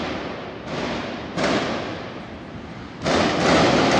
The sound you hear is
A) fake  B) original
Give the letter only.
B